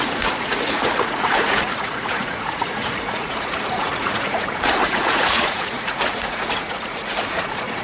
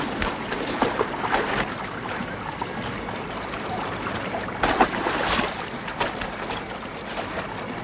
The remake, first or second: first